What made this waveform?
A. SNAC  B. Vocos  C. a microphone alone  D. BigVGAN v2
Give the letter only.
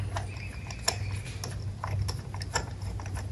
C